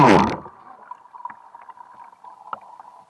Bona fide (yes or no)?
yes